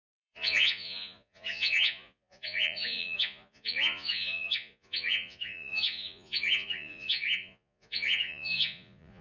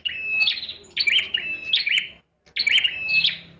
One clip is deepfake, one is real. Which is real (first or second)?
second